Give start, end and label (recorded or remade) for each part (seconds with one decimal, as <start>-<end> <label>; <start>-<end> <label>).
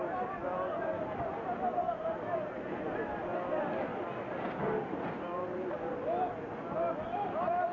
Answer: 0.0-7.7 recorded